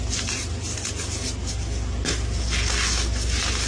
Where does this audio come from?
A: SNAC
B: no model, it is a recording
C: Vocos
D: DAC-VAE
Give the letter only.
B